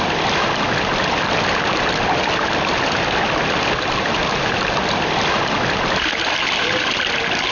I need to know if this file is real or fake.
real